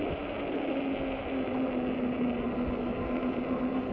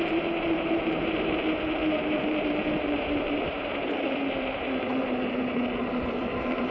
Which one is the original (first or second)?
first